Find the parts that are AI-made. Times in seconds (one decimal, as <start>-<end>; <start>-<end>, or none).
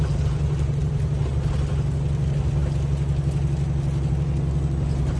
0.8-1.3